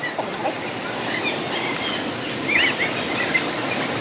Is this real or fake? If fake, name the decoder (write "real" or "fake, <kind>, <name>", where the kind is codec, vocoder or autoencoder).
real